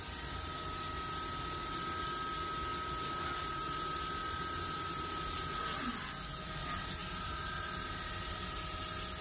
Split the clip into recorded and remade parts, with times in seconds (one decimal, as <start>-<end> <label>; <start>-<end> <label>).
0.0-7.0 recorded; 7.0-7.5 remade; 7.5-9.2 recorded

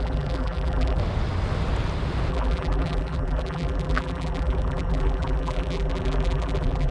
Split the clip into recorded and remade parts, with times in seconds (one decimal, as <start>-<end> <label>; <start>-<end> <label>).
0.0-1.0 remade; 1.0-2.3 recorded; 2.3-6.9 remade

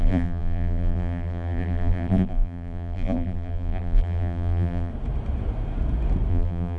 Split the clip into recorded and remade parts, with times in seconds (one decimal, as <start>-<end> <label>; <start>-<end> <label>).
0.0-4.9 remade; 4.9-6.3 recorded; 6.3-6.8 remade

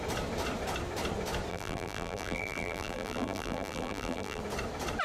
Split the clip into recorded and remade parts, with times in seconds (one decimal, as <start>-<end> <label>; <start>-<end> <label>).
0.0-1.5 recorded; 1.5-4.4 remade; 4.4-5.0 recorded

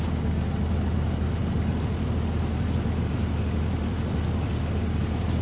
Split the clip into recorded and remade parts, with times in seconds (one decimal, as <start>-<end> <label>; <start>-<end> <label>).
0.0-1.4 recorded; 1.4-3.1 remade; 3.1-5.4 recorded